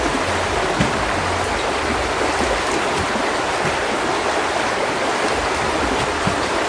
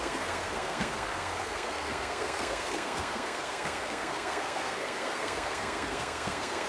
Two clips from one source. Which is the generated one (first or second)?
second